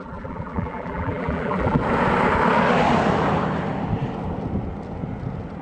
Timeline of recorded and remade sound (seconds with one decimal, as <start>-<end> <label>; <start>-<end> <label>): 0.0-1.8 remade; 1.8-5.6 recorded